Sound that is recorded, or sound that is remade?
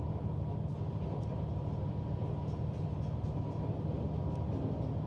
recorded